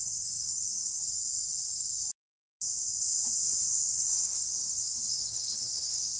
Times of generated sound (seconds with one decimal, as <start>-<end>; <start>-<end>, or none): 0.0-1.0; 3.6-6.2